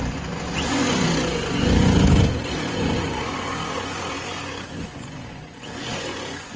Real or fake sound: fake